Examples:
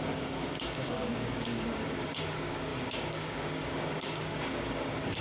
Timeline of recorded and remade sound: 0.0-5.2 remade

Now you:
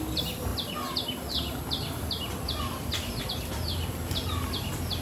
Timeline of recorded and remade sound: 0.0-5.0 recorded

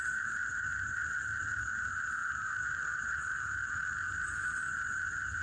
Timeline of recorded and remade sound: 0.0-5.4 recorded

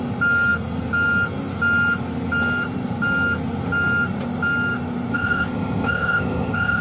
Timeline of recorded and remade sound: 0.0-5.1 recorded; 5.1-6.8 remade

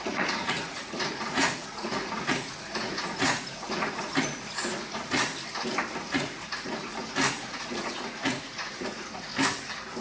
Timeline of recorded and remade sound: 0.0-5.3 remade; 5.3-6.0 recorded; 6.0-9.3 remade; 9.3-10.0 recorded

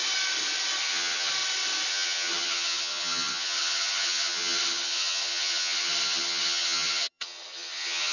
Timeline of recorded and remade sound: 0.0-0.8 recorded; 0.8-1.3 remade; 1.3-1.9 recorded; 1.9-8.1 remade

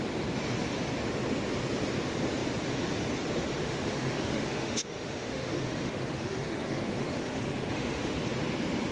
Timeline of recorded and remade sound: 0.0-3.6 recorded; 3.6-8.2 remade; 8.2-8.9 recorded

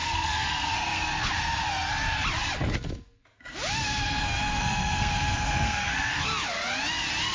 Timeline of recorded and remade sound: 0.0-1.3 remade; 1.3-4.5 recorded; 4.5-6.2 remade; 6.2-7.3 recorded